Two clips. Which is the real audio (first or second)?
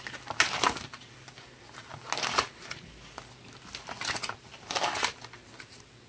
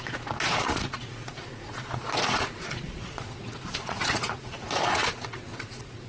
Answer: first